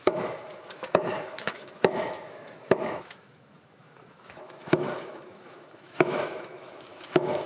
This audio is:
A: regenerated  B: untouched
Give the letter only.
A